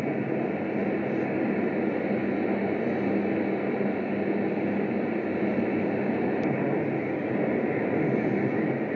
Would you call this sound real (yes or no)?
yes